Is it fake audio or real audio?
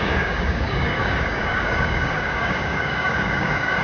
fake